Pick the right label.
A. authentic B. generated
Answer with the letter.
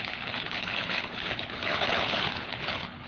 B